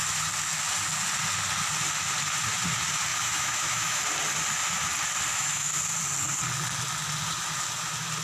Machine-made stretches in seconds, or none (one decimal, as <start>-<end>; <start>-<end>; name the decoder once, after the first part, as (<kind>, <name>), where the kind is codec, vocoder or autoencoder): 3.1-4.0 (autoencoder, DAC-VAE); 5.3-5.8